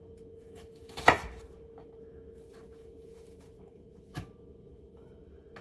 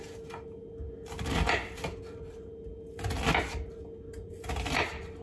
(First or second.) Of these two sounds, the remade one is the first